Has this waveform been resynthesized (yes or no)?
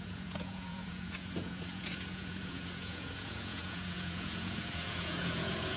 yes